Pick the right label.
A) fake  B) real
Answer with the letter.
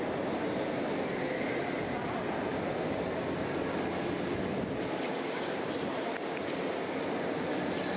B